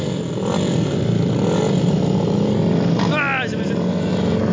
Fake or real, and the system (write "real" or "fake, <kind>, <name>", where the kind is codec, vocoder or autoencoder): real